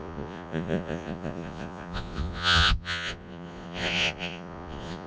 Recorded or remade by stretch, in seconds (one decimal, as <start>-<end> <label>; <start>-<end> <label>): 0.0-5.1 remade